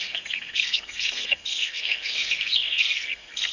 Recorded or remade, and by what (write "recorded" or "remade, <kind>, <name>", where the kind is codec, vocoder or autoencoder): remade, codec, SNAC